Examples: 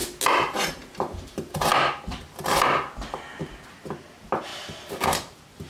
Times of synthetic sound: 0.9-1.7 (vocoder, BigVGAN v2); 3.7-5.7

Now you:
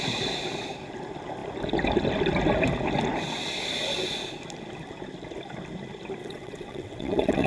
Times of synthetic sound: 6.2-7.5 (vocoder, WaveNeXt)

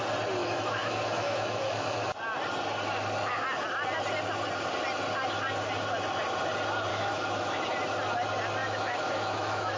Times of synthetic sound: 0.4-2.1 (autoencoder, DAC-VAE); 6.9-7.6; 8.6-9.8

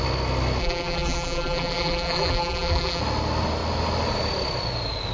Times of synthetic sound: 0.6-3.0 (vocoder, BigVGAN v2)

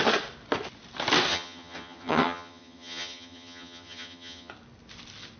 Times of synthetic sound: 1.3-4.5 (vocoder, HiFi-GAN)

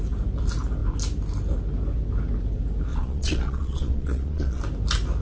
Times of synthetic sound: 2.9-4.6 (vocoder, Vocos)

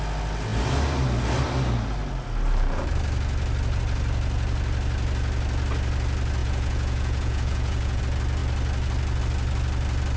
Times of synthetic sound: 6.4-8.0 (vocoder, Vocos)